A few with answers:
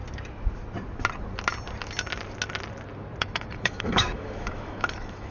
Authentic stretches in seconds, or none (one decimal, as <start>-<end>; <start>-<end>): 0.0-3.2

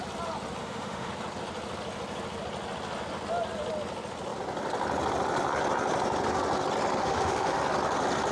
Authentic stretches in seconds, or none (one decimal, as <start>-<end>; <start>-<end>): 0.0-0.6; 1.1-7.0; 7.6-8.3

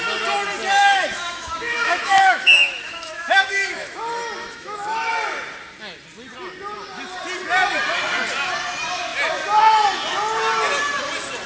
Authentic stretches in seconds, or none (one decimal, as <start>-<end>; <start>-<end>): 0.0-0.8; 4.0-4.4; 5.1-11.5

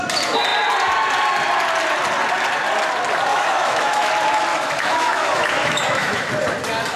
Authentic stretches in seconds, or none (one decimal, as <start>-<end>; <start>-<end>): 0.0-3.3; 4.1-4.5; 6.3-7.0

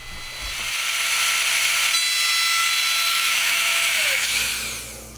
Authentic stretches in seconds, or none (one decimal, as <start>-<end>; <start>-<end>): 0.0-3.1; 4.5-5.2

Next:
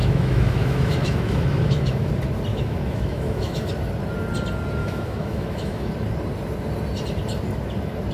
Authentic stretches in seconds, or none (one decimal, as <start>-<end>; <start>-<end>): 2.1-2.5; 3.7-4.8; 5.9-8.1

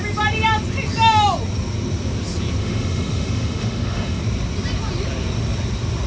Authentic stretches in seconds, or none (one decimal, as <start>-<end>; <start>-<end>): 0.0-2.6; 4.2-6.1